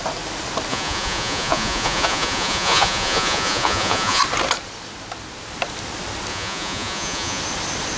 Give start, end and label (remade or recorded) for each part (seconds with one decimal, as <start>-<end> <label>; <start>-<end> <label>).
0.0-0.7 recorded; 0.7-4.2 remade; 4.2-6.3 recorded; 6.3-7.4 remade; 7.4-8.0 recorded